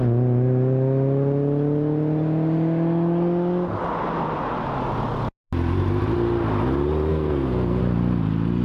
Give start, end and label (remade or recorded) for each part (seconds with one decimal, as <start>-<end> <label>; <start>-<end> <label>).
0.0-7.1 recorded; 7.1-7.8 remade; 7.8-8.6 recorded